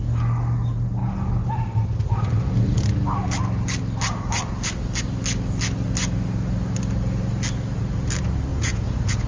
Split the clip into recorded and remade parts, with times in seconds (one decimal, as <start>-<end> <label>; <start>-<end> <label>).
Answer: 0.0-8.5 recorded; 8.5-9.3 remade